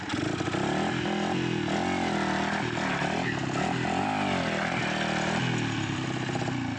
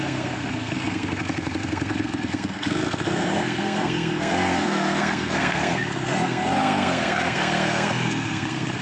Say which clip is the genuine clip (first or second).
first